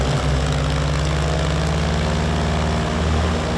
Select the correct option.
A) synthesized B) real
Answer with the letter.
B